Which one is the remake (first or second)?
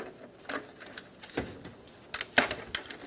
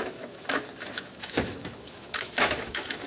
second